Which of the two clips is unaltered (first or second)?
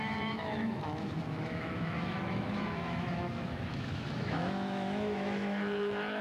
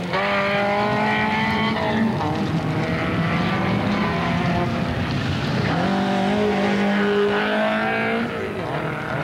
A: second